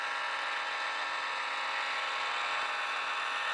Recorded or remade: recorded